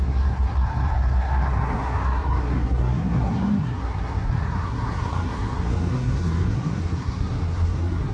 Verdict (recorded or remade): remade